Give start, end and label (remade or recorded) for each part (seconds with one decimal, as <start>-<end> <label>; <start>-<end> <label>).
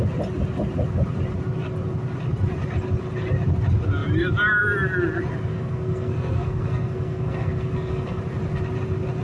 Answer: 0.0-5.5 recorded; 5.5-8.2 remade; 8.2-9.2 recorded